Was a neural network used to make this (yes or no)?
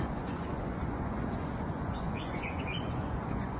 yes